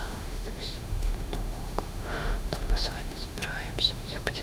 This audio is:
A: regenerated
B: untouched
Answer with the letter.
A